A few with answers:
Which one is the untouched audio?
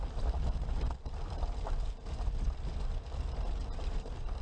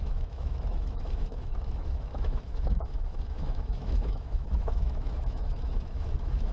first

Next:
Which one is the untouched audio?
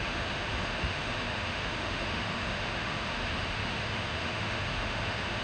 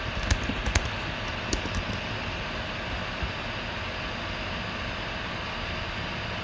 second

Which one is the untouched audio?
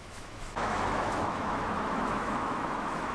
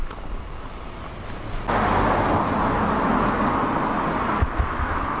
second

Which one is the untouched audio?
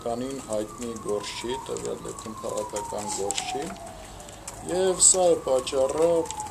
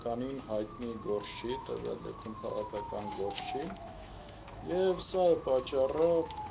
first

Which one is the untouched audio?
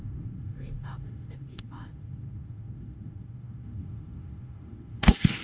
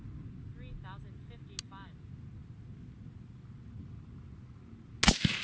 second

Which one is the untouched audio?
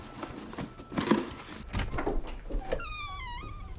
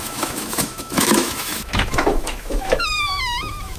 first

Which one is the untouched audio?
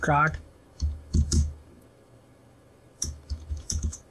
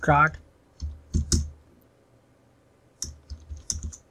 second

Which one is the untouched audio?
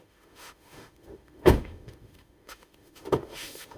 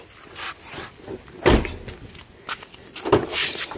second